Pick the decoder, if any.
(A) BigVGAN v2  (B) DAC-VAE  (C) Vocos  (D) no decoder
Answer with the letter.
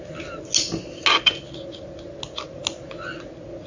D